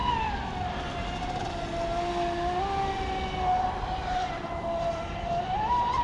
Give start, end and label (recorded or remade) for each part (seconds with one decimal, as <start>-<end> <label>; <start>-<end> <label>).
0.0-3.6 recorded; 3.6-6.0 remade